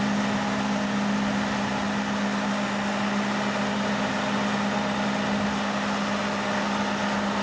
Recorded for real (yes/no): yes